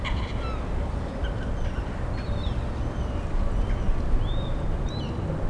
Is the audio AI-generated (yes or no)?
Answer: no